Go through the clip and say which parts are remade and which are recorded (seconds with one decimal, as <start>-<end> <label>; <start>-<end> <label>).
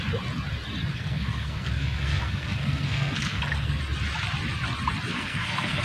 0.0-0.9 recorded; 0.9-3.8 remade; 3.8-5.1 recorded; 5.1-5.8 remade